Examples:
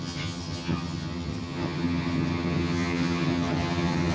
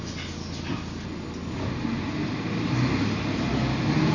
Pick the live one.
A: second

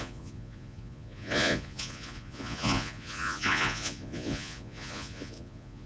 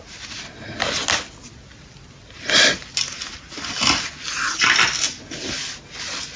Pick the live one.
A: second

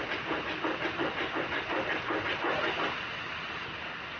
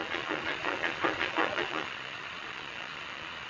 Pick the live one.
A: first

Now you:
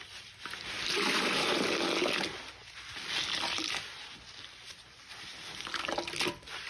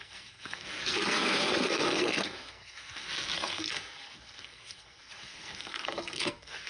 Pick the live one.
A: first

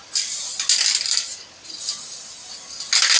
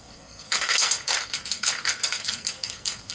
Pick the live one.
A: first